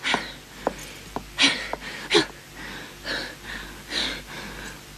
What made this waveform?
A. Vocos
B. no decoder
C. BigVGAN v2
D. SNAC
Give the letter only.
B